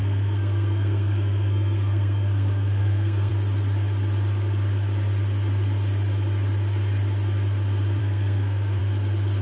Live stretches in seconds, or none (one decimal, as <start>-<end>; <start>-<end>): 3.3-8.0; 8.8-9.4